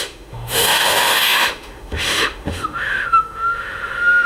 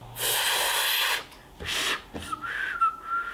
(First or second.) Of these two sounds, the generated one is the first